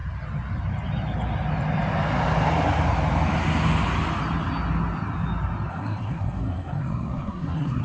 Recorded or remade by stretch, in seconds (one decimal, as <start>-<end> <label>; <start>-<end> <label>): 0.0-5.7 recorded; 5.7-7.8 remade